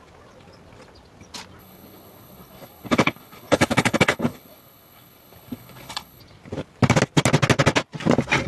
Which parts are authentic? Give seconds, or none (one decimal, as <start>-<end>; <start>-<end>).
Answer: 0.0-1.6; 6.2-8.5